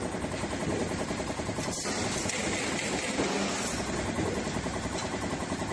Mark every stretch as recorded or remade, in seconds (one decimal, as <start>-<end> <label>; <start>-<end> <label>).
0.0-5.7 recorded